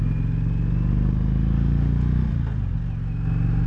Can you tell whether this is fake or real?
real